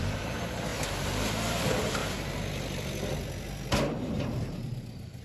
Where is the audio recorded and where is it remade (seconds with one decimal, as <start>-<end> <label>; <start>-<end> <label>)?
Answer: 0.0-0.7 remade; 0.7-1.6 recorded; 1.6-2.0 remade; 2.0-4.0 recorded; 4.0-5.2 remade